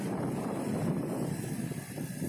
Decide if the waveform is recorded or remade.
remade